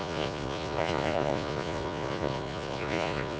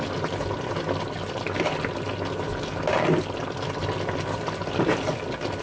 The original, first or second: second